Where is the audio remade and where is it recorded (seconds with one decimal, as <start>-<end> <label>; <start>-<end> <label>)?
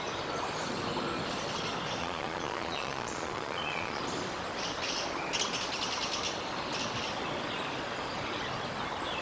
0.0-2.0 recorded; 2.0-4.0 remade; 4.0-9.2 recorded